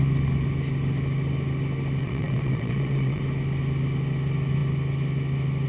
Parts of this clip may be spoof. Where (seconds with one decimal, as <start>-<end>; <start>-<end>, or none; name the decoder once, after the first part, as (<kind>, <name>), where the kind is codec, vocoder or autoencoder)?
2.0-3.2 (vocoder, Vocos)